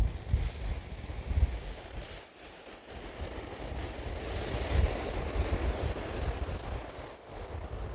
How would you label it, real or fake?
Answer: real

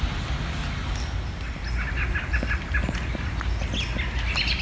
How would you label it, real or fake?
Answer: real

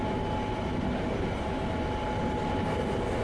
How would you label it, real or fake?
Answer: real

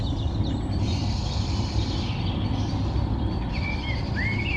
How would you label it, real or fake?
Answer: real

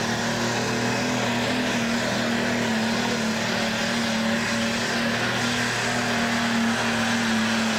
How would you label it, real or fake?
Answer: real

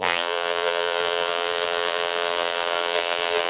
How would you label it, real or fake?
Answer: fake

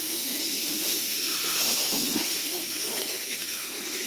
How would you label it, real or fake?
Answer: fake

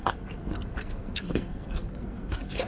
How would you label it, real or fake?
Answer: fake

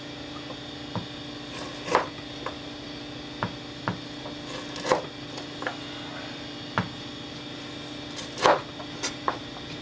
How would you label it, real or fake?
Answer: real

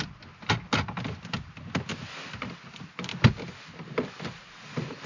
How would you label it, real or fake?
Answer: real